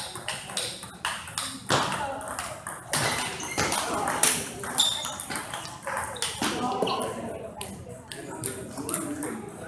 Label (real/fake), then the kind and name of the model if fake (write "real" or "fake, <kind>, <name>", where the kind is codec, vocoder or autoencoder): real